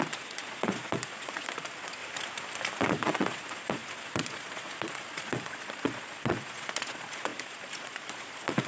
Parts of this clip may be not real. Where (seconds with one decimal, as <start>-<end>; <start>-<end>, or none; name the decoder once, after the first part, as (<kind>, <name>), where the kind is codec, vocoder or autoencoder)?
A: 0.0-2.0 (vocoder, Vocos); 2.9-8.7